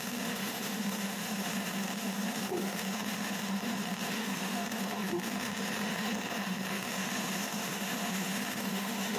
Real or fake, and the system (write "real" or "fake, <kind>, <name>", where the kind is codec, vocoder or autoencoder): fake, autoencoder, DAC-VAE